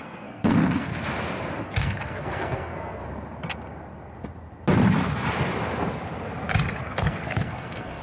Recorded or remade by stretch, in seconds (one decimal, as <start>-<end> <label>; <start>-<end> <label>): 0.0-0.9 remade; 0.9-1.6 recorded; 1.6-3.0 remade; 3.0-6.8 recorded; 6.8-8.0 remade